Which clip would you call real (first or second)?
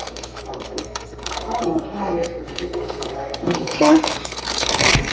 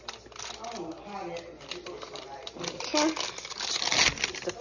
second